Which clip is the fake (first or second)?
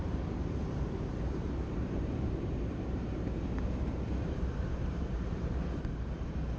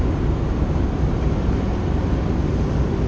first